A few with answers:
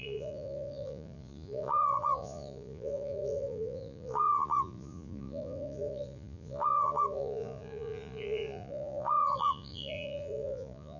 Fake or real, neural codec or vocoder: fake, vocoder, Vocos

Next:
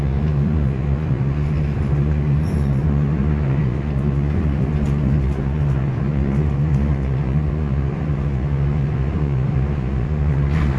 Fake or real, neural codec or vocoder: fake, vocoder, Vocos